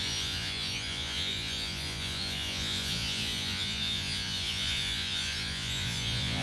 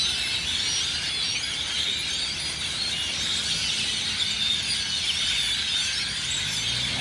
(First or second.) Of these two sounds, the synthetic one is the first